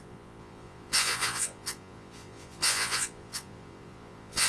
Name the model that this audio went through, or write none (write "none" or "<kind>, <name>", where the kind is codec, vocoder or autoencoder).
vocoder, Vocos